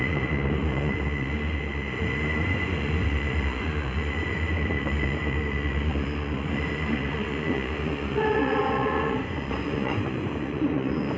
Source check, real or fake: fake